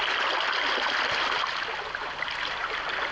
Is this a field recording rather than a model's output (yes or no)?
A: yes